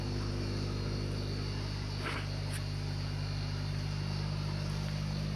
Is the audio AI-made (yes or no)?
no